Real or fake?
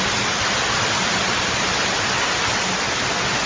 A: real